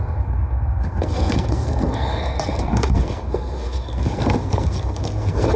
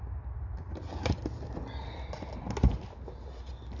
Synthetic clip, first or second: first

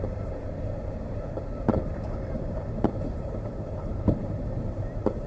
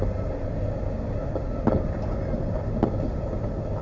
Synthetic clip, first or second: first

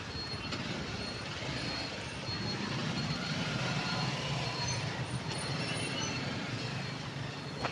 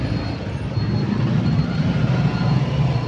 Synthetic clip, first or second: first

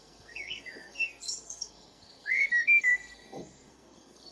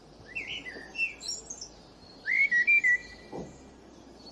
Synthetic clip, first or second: first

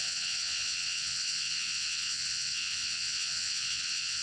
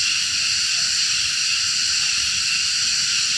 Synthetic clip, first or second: first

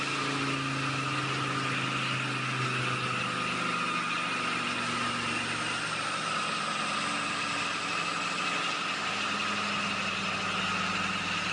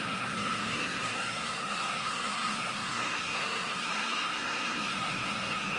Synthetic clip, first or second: second